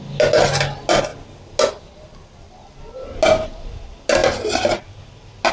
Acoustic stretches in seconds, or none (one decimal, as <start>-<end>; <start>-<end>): 0.0-5.5